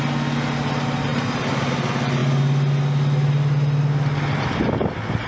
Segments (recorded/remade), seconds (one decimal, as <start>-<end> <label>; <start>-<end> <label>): 0.0-5.3 recorded

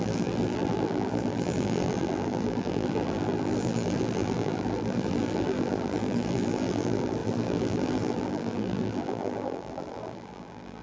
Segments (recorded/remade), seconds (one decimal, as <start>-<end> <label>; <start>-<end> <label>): 0.0-10.8 remade

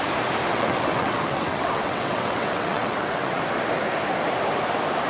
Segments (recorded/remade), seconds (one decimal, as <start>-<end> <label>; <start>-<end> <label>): 0.0-0.5 recorded; 0.5-3.4 remade; 3.4-5.1 recorded

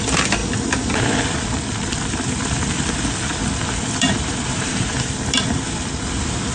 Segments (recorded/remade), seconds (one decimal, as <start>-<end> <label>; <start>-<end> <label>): 0.0-6.5 remade

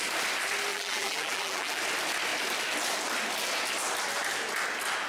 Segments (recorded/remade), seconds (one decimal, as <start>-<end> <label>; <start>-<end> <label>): 0.0-0.7 recorded; 0.7-1.8 remade; 1.8-5.1 recorded